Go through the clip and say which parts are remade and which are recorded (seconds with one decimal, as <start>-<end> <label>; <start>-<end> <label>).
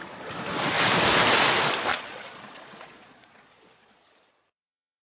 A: 0.0-1.9 recorded; 1.9-5.0 remade